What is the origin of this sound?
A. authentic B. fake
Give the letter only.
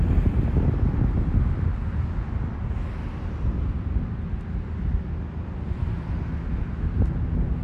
A